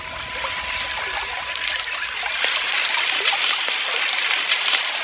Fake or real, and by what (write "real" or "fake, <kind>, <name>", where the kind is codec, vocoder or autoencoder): real